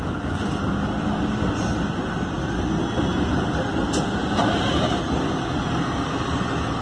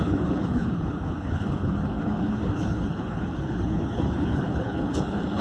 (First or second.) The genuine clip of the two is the first